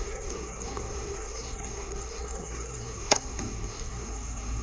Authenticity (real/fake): fake